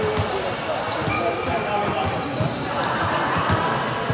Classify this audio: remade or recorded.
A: recorded